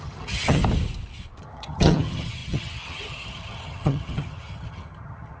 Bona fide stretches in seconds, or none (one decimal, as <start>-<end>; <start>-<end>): 0.6-1.4